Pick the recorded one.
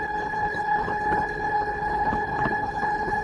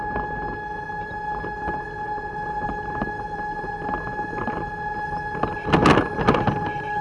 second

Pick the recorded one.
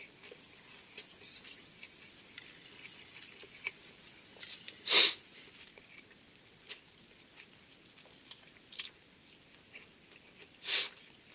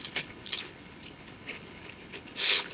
first